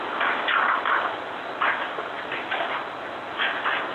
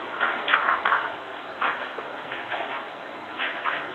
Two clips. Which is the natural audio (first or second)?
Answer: first